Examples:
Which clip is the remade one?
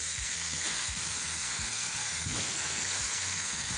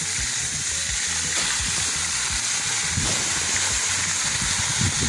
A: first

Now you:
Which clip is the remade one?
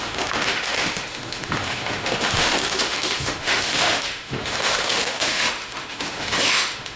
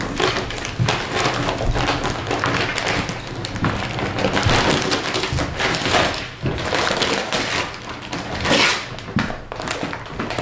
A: first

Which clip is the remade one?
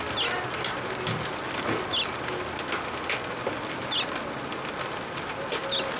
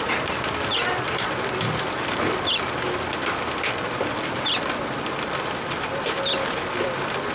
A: second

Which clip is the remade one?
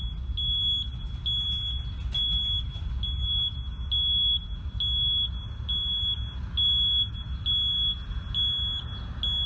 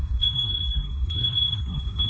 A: second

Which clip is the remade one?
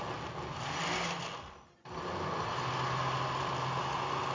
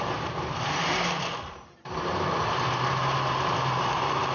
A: second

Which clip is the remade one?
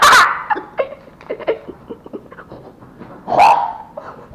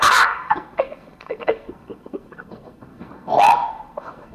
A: second